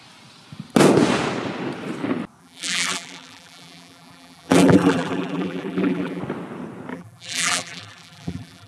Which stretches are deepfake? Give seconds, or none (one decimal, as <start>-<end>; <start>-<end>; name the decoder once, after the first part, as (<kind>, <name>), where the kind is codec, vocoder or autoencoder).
2.4-6.2 (vocoder, BigVGAN v2); 6.9-8.7